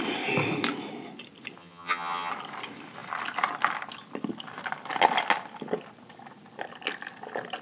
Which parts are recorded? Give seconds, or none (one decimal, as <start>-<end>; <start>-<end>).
0.0-1.6; 2.3-7.6